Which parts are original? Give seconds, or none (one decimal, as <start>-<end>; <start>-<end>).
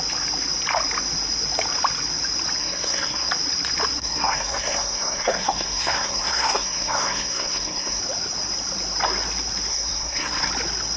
0.0-2.6; 3.3-4.0; 8.0-9.7; 10.5-11.0